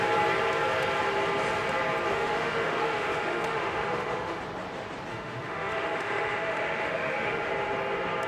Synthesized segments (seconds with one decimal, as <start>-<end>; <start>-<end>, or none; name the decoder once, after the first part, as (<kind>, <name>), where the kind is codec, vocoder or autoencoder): 2.1-4.4 (autoencoder, DAC-VAE); 5.1-7.5